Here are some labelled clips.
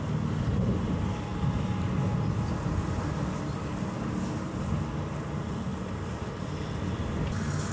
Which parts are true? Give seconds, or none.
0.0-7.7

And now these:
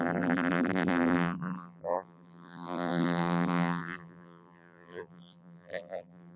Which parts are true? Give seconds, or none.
none

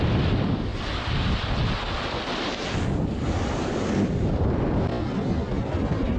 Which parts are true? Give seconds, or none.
0.7-4.3

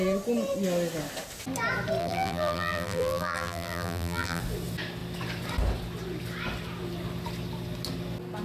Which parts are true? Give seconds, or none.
0.0-2.0; 4.4-8.4

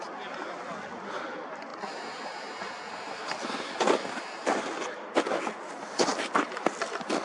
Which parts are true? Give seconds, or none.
0.0-6.1

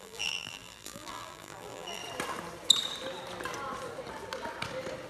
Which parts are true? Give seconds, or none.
2.0-5.1